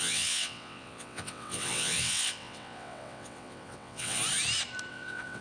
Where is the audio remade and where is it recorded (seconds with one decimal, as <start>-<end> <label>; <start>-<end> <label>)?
0.0-4.2 remade; 4.2-4.9 recorded; 4.9-5.4 remade